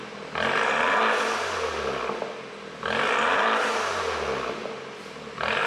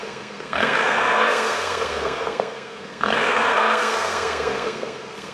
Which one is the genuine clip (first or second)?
first